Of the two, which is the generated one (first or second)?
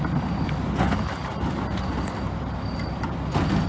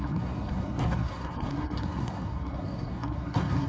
second